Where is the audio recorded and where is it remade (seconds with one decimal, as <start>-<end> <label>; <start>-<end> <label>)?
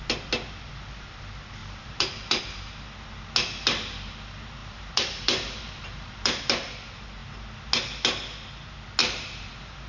0.0-1.6 recorded; 1.6-2.4 remade; 2.4-4.6 recorded; 4.6-6.4 remade; 6.4-9.0 recorded; 9.0-9.5 remade; 9.5-9.9 recorded